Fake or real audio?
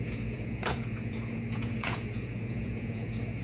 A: fake